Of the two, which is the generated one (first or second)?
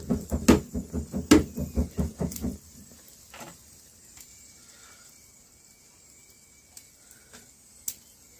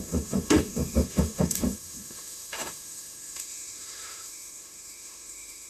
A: second